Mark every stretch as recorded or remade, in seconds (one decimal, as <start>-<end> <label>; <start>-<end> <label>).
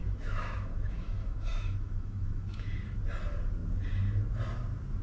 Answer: 0.0-3.0 remade; 3.0-5.0 recorded